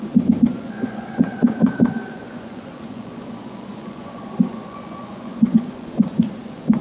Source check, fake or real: fake